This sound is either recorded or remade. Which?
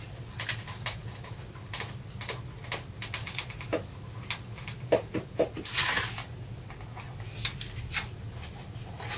recorded